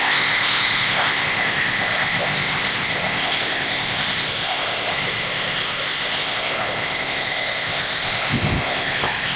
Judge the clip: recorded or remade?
remade